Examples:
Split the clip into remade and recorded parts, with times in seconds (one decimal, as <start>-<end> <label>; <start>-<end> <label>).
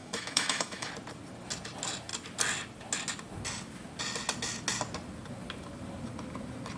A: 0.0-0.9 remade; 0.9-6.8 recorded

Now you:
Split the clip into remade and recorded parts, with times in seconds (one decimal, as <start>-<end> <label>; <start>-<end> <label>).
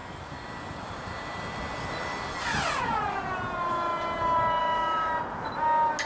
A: 0.0-4.6 recorded; 4.6-5.1 remade; 5.1-6.1 recorded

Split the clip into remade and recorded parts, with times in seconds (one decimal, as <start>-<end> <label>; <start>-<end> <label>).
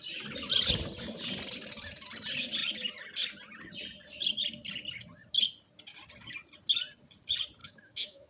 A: 0.0-7.6 recorded; 7.6-8.3 remade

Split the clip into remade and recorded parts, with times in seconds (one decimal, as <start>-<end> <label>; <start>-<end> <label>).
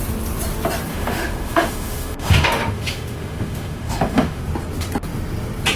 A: 0.0-0.9 recorded; 0.9-4.4 remade; 4.4-5.8 recorded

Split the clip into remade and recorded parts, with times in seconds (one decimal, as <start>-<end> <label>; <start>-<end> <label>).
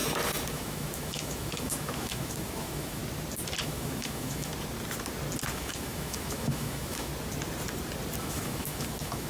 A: 0.0-0.5 recorded; 0.5-3.0 remade; 3.0-3.6 recorded; 3.6-4.5 remade; 4.5-5.5 recorded; 5.5-7.1 remade; 7.1-8.2 recorded; 8.2-9.3 remade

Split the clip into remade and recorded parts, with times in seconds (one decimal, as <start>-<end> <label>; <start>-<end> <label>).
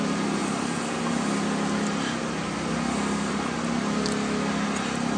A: 0.0-5.2 recorded